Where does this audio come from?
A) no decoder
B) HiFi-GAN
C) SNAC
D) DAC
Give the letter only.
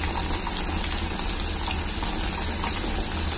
A